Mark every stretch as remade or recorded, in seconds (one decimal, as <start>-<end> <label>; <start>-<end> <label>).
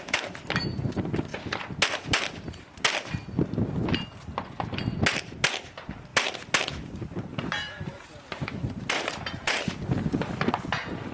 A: 0.0-7.3 recorded; 7.3-9.6 remade; 9.6-11.1 recorded